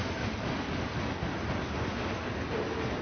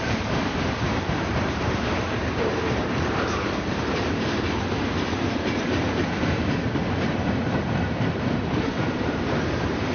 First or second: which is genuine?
first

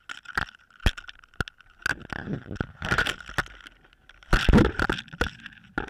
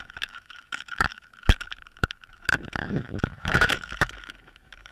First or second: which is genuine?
first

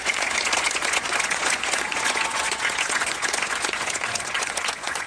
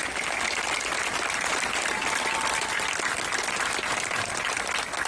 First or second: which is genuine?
second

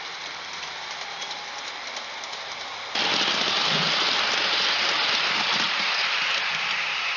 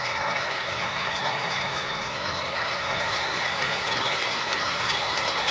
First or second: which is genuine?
first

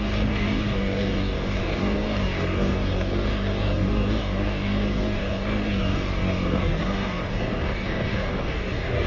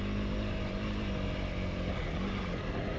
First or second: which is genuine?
second